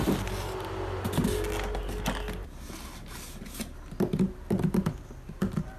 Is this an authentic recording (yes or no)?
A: yes